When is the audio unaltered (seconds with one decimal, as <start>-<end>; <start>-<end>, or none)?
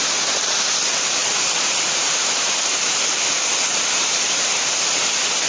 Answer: 0.0-1.2; 4.5-5.5